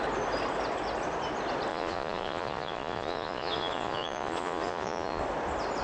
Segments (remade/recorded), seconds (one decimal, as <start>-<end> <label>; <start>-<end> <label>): 0.0-1.7 recorded; 1.7-5.2 remade; 5.2-5.8 recorded